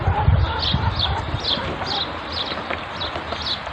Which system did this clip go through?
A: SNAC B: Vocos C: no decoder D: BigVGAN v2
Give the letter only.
C